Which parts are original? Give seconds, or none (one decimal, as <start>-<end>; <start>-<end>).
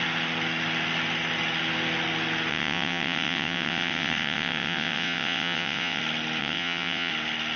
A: 0.0-2.5; 6.0-6.4; 7.1-7.6